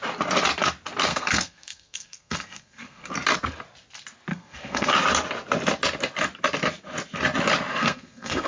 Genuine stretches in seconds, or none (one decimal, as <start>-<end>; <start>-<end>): 0.0-1.1; 3.1-4.3; 4.9-7.7